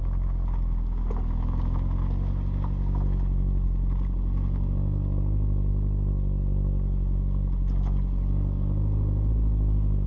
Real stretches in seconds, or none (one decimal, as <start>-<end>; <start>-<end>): 0.0-10.1